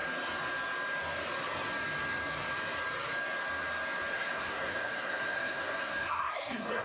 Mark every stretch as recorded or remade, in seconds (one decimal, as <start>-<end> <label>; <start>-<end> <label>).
0.0-4.1 recorded; 4.1-6.8 remade